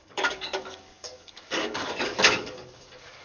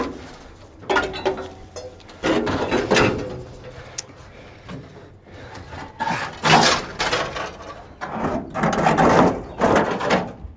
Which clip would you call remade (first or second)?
first